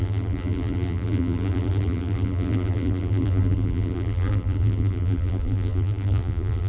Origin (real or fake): fake